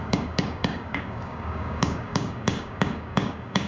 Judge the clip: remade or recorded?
remade